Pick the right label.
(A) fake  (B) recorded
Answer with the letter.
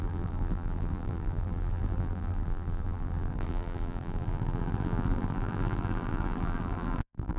A